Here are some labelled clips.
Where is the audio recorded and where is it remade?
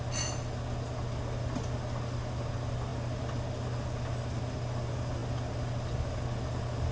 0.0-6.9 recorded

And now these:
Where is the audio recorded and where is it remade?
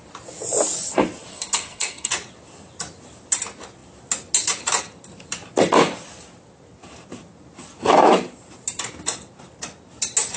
0.0-1.3 recorded; 1.3-2.1 remade; 2.1-10.4 recorded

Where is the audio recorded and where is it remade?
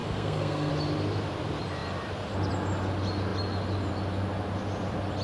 0.0-0.7 remade; 0.7-5.2 recorded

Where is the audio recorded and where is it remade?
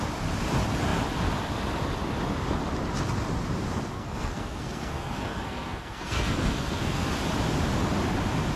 0.0-3.9 recorded; 3.9-7.1 remade; 7.1-8.6 recorded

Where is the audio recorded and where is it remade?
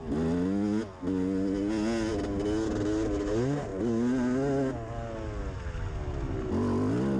0.0-7.2 recorded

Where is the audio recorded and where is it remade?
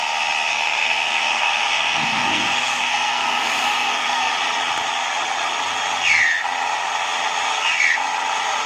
0.0-0.5 recorded; 0.5-4.3 remade; 4.3-8.7 recorded